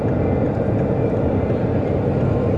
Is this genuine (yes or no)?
yes